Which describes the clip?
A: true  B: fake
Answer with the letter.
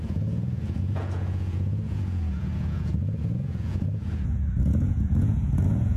B